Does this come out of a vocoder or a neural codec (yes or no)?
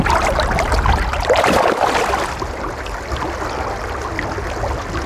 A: no